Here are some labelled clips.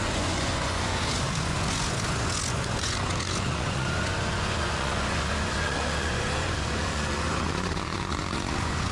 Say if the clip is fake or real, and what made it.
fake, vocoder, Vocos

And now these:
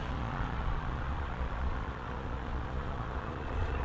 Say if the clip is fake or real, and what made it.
fake, vocoder, Vocos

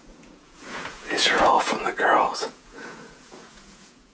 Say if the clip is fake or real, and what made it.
fake, vocoder, Vocos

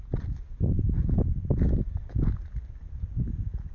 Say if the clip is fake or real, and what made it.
real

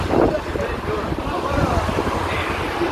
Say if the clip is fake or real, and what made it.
real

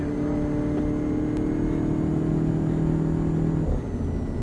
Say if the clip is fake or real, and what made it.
real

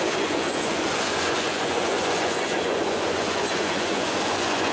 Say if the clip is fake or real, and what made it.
fake, vocoder, Vocos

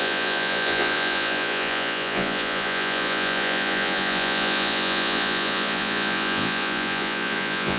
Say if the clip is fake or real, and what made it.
fake, vocoder, Vocos